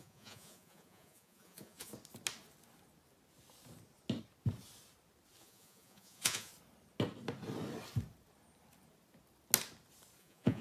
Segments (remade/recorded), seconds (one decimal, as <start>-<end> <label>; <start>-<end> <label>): 0.0-1.9 remade; 1.9-5.4 recorded; 5.4-6.5 remade; 6.5-10.2 recorded; 10.2-10.6 remade